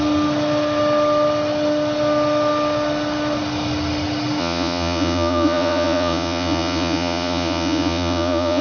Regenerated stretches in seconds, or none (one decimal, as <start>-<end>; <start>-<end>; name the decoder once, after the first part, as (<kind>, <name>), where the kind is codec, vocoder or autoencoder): 4.4-8.6 (vocoder, Vocos)